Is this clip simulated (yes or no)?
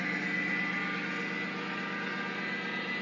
no